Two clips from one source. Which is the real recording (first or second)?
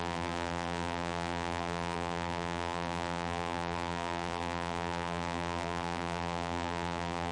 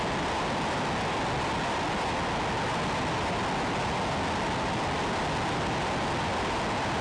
second